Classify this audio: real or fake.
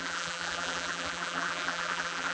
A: fake